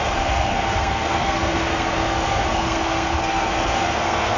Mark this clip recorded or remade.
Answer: remade